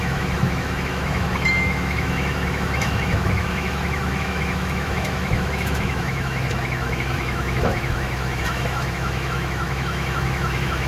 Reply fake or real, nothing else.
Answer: fake